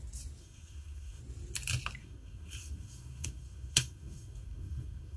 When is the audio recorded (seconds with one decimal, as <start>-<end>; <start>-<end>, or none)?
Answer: 0.0-0.4; 1.2-2.0

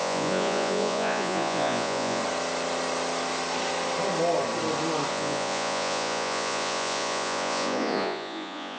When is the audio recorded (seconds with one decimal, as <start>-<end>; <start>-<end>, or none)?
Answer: 2.2-5.1